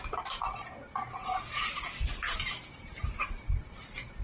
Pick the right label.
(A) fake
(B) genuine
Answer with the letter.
A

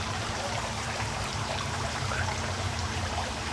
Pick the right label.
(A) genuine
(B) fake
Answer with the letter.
B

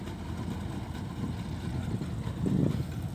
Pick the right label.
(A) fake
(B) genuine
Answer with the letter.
B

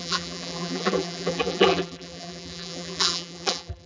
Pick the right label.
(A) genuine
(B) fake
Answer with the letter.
B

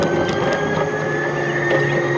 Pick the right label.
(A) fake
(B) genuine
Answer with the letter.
B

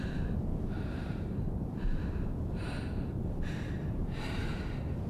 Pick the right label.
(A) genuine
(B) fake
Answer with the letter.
B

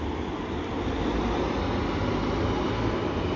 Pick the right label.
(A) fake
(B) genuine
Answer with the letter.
A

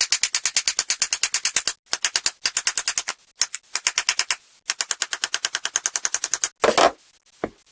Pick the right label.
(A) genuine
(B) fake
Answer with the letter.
A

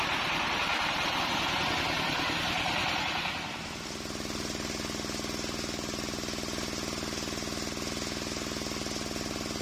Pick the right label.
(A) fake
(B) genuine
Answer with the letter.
B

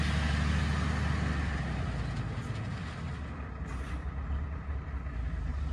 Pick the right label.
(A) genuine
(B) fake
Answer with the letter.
A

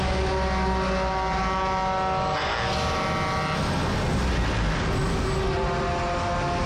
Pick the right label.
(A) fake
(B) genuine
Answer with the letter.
B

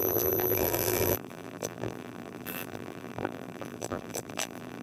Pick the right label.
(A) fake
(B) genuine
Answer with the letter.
A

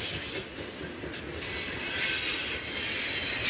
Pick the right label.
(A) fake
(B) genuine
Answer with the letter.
B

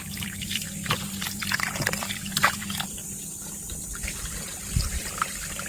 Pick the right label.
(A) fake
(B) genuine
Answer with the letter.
A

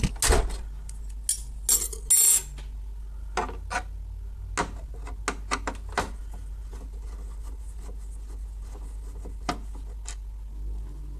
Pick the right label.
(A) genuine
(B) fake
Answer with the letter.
A